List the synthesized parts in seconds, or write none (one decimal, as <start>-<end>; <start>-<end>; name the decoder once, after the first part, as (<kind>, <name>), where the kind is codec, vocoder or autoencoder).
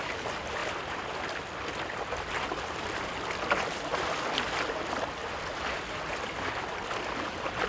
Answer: none